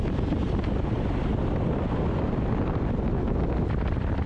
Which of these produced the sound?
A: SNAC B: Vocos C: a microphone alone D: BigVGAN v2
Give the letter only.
C